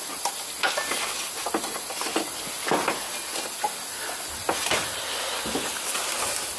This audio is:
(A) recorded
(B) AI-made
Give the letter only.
A